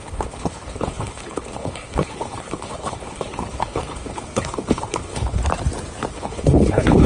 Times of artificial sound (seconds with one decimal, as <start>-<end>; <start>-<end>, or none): 0.0-5.4; 6.1-7.1